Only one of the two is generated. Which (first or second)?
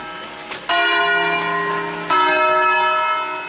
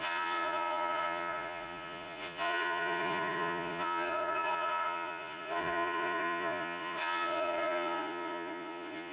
second